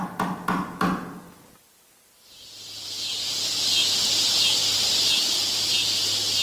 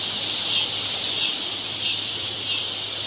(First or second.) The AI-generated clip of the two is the second